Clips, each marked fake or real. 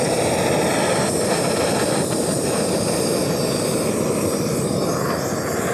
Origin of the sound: real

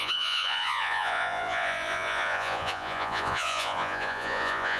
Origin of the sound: fake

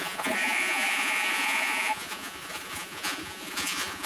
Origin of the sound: fake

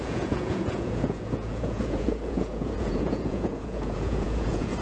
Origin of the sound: fake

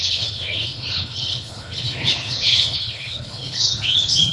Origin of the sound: fake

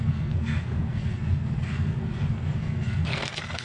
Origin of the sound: fake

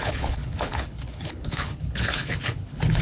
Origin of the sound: fake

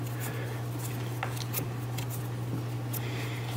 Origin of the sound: real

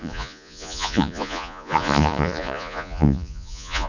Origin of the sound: fake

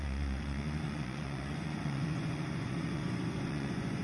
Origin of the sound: fake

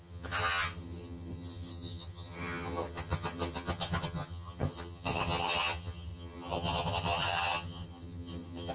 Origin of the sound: fake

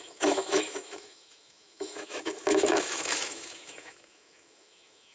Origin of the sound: fake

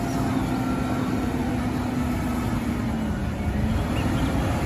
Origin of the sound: real